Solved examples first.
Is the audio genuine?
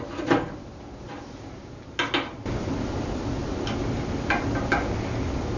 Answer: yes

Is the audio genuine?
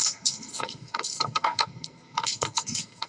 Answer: no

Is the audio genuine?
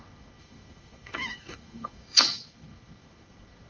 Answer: no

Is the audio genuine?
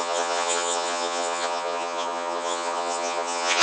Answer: no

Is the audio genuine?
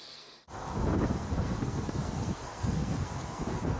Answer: no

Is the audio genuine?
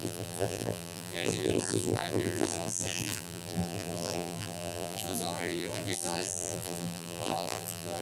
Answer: no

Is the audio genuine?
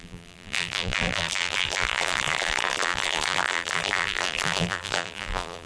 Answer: no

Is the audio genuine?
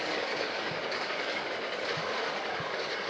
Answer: no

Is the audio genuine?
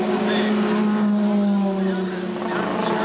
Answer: yes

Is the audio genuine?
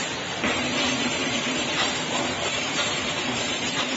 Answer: no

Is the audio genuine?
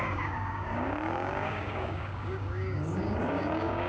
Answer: no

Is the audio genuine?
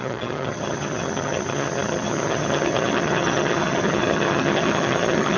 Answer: no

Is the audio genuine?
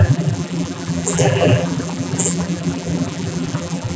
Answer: no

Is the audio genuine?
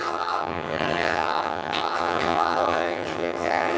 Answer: no